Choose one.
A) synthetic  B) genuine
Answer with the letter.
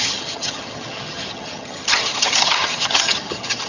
A